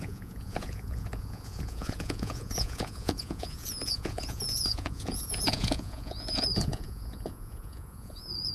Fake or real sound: fake